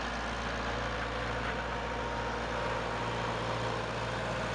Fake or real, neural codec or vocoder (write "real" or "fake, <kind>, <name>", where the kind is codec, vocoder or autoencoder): real